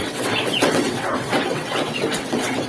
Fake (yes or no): yes